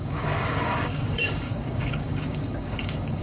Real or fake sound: fake